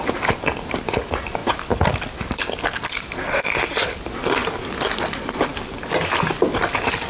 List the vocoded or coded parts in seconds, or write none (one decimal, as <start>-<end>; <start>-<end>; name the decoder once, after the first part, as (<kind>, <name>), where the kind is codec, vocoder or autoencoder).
none

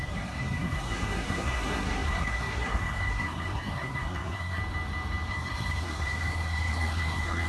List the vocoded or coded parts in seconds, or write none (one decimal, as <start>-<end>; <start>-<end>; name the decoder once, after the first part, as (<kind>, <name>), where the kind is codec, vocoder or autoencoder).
0.0-4.6 (codec, SNAC); 5.3-7.5

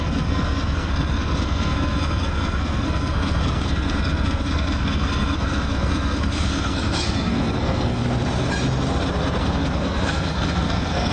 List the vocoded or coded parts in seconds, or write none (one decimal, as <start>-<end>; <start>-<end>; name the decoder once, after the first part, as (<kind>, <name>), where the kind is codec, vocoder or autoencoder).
0.0-8.0 (codec, SNAC); 9.4-11.1

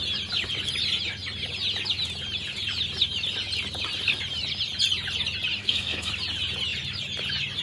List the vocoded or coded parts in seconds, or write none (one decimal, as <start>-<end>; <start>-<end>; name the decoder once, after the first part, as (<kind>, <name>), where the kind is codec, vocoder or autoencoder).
5.6-6.1 (codec, SNAC)

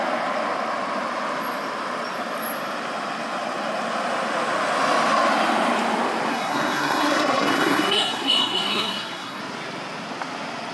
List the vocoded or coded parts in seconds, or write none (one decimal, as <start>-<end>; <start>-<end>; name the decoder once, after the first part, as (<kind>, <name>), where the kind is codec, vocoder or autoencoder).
6.3-9.4 (codec, SNAC)

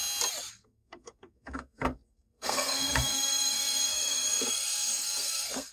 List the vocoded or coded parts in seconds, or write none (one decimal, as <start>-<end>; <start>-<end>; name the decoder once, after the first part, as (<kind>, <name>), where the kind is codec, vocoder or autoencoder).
0.5-5.7 (codec, SNAC)

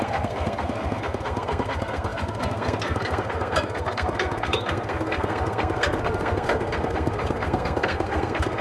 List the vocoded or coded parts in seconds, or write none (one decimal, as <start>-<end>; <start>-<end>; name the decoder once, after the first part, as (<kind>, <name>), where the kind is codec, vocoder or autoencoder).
0.0-8.6 (codec, SNAC)